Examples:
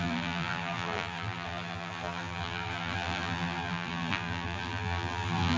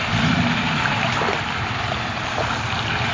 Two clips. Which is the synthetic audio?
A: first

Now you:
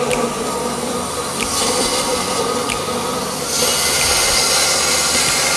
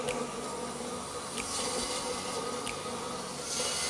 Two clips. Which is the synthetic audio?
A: first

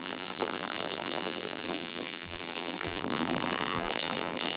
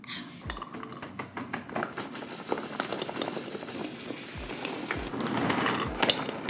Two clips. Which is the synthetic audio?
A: first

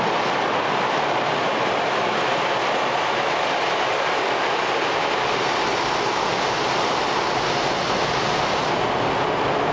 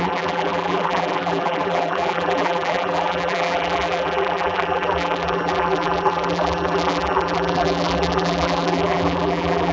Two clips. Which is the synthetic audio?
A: second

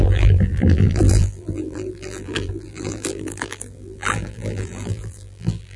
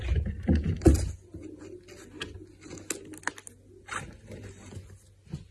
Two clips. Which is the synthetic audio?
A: first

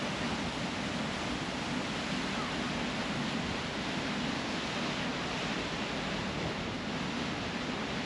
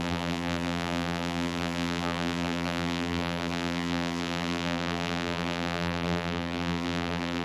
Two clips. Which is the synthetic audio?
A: second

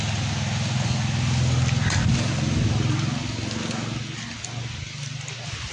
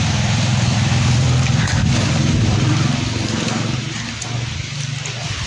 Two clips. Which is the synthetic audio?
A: second